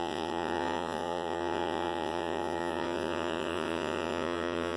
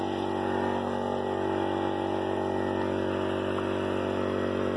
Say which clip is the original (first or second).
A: second